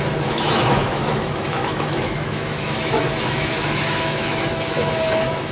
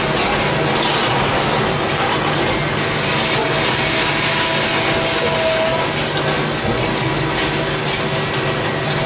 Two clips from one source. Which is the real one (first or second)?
second